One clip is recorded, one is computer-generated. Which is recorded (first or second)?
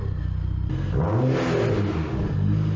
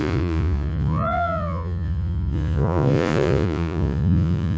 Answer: first